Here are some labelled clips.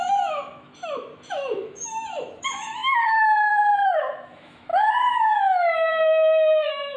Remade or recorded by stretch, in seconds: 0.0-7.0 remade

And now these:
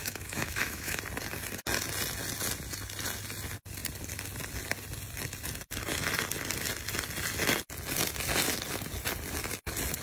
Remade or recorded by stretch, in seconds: 0.0-1.0 remade; 1.0-10.0 recorded

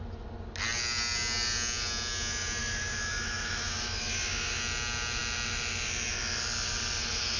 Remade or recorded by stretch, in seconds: 0.0-2.6 recorded; 2.6-4.6 remade; 4.6-7.4 recorded

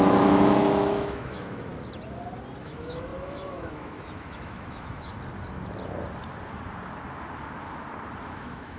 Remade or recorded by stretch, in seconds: 0.0-1.7 remade; 1.7-2.6 recorded; 2.6-5.1 remade; 5.1-8.2 recorded; 8.2-8.8 remade

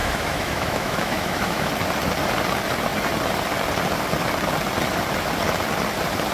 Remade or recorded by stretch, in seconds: 0.0-1.7 remade; 1.7-6.3 recorded

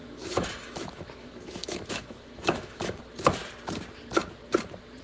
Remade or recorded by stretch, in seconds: 0.0-3.0 remade; 3.0-5.0 recorded